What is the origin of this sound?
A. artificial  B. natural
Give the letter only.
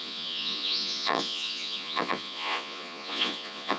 A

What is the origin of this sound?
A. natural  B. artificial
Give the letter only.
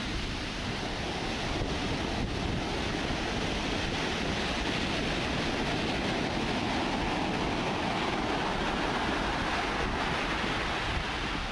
A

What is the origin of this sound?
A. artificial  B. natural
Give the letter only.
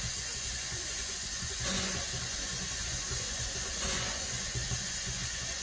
A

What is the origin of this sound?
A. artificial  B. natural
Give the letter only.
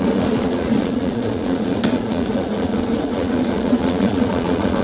A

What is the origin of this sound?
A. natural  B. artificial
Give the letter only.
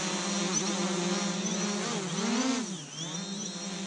A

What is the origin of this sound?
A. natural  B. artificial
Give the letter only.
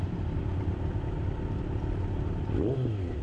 A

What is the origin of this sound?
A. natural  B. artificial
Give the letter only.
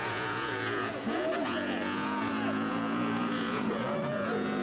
B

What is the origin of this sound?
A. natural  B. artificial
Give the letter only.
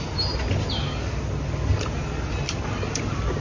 A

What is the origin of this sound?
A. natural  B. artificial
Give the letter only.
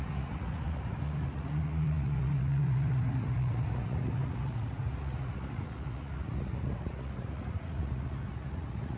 B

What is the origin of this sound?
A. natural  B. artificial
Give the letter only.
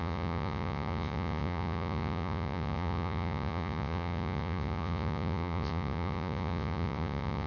B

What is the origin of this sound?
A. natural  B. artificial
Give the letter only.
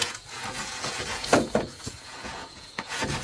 B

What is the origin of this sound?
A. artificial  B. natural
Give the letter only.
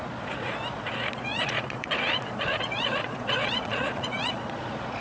A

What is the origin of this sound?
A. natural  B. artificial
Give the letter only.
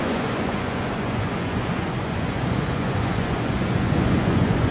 B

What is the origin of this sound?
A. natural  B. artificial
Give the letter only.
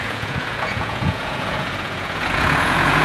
B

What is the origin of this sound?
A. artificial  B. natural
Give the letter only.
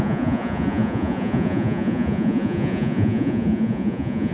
A